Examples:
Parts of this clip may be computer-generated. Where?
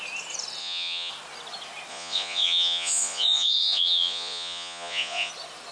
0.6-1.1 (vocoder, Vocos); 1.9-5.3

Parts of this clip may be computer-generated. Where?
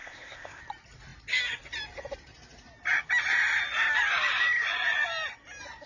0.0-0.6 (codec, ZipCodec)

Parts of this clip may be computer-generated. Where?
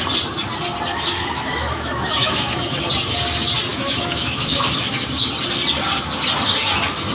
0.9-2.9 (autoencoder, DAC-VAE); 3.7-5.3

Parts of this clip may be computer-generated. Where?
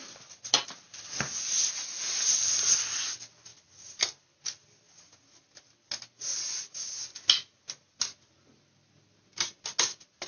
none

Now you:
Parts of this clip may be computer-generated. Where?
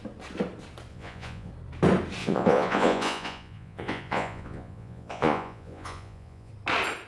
0.9-1.5 (vocoder, Vocos); 2.2-6.5